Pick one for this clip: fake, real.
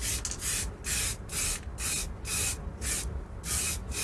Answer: real